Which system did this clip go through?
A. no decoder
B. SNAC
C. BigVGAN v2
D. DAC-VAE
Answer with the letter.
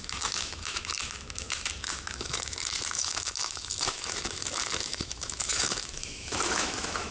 D